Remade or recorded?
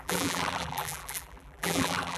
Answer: remade